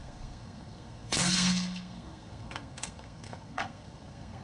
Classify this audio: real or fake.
fake